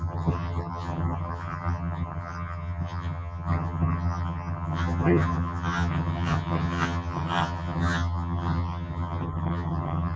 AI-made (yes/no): yes